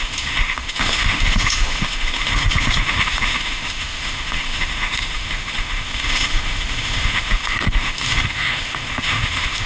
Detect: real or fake fake